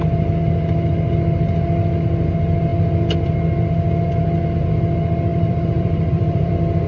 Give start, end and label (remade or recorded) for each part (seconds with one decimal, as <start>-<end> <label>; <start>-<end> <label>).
0.0-5.3 recorded; 5.3-6.5 remade; 6.5-6.9 recorded